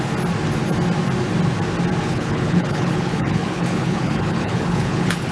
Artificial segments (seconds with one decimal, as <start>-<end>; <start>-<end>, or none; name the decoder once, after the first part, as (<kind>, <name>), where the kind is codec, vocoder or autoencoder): 2.0-5.3 (codec, HILCodec)